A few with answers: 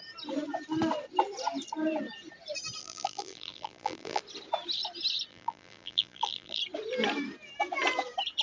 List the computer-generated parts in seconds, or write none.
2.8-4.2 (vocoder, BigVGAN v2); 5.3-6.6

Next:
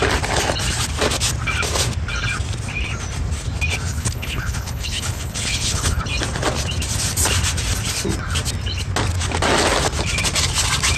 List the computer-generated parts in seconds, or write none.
3.9-6.0 (codec, HILCodec)